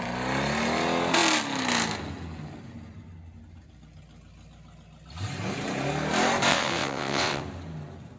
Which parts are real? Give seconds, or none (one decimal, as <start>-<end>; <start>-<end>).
0.0-6.5; 7.4-8.2

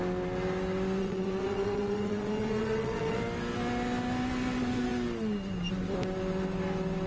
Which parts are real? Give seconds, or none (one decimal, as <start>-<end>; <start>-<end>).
0.0-1.0; 3.2-7.1

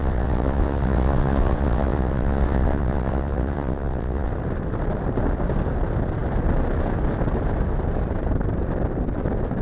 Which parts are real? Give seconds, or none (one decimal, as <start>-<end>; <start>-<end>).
4.3-9.6